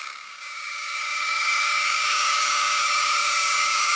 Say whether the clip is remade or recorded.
remade